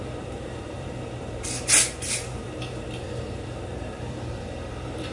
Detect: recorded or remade remade